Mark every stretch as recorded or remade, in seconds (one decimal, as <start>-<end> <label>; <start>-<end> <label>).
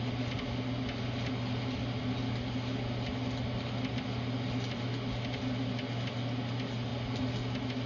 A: 0.0-7.9 recorded